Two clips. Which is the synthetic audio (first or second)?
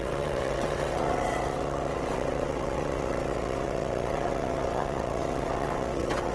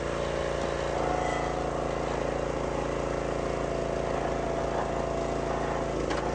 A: first